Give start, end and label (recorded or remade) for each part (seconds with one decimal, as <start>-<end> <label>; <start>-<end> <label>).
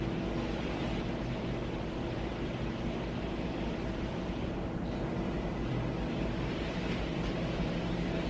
0.0-2.3 remade; 2.3-3.1 recorded; 3.1-8.3 remade